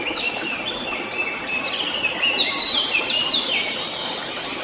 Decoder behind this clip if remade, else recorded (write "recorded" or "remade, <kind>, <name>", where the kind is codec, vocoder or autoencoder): recorded